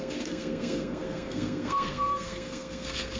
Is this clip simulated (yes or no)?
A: yes